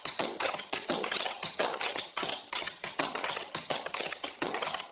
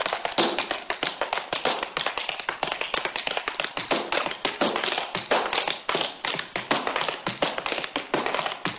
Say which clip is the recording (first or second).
second